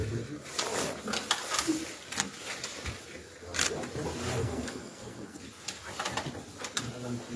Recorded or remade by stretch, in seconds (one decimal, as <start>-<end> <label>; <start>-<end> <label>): 0.0-4.4 recorded; 4.4-5.4 remade; 5.4-7.4 recorded